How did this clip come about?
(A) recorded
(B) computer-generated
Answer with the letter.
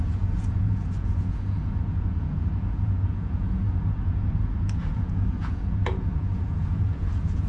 B